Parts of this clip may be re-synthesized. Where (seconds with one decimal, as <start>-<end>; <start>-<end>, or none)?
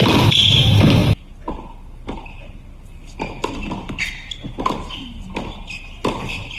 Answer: none